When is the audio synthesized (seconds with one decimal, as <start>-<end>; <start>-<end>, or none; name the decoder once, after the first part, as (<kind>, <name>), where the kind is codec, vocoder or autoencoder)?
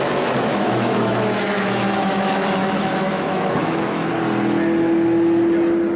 0.5-4.1 (autoencoder, DAC-VAE)